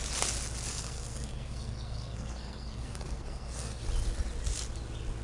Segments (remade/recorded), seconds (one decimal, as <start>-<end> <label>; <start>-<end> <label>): 0.0-0.7 recorded; 0.7-3.8 remade; 3.8-5.2 recorded